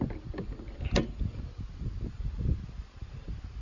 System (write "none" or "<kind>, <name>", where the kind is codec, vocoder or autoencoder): none